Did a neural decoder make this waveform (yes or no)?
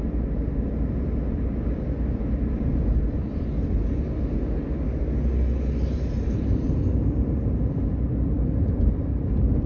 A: no